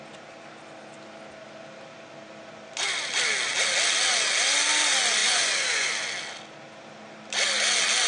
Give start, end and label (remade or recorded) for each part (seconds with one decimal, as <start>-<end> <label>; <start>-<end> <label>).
0.0-5.2 recorded; 5.2-5.9 remade; 5.9-8.1 recorded